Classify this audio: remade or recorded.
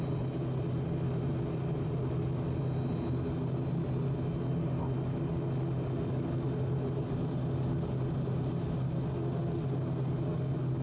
recorded